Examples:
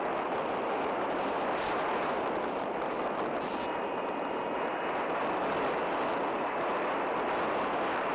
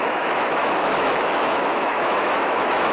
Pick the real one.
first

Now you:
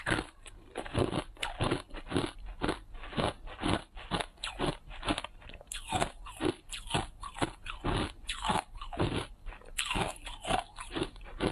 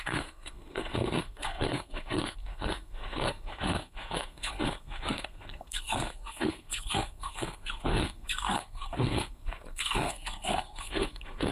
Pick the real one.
first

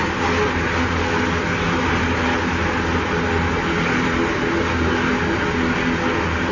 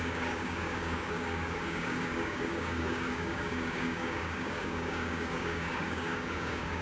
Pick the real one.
first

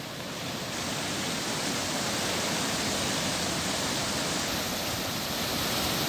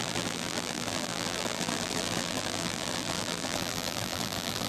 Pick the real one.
first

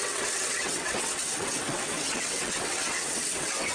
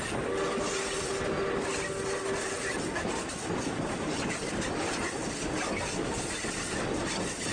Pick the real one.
second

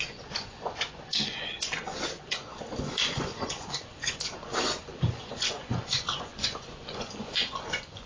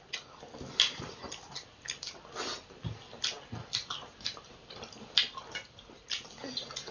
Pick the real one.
second